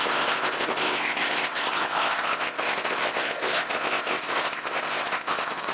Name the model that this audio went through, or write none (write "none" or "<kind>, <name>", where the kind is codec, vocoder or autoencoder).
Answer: codec, ZipCodec